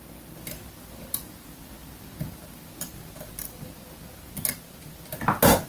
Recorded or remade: recorded